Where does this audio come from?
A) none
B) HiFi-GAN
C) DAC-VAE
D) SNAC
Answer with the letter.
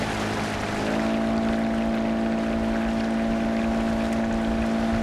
A